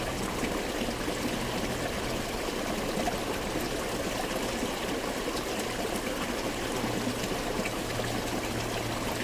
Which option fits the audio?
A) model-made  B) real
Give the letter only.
B